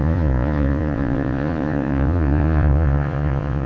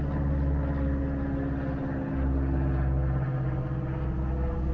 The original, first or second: second